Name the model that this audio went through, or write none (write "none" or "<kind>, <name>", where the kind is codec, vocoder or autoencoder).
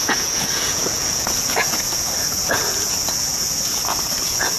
vocoder, Vocos